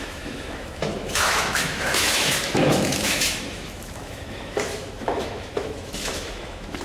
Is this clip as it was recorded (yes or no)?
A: no